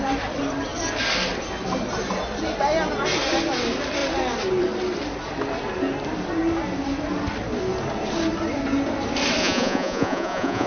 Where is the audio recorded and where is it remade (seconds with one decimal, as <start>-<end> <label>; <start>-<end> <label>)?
0.0-9.4 recorded; 9.4-10.7 remade